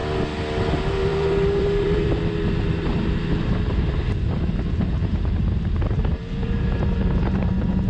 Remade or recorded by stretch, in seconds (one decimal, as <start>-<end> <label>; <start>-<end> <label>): 0.0-0.7 recorded; 0.7-7.9 remade